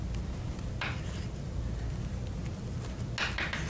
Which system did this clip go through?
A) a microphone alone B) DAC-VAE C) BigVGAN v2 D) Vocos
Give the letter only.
A